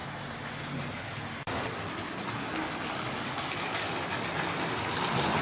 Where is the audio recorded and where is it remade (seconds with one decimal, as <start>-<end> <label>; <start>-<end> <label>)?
0.0-5.4 recorded